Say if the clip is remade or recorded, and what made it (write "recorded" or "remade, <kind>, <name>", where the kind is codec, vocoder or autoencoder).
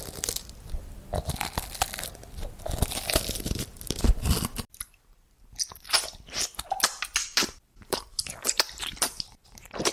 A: remade, vocoder, BigVGAN v2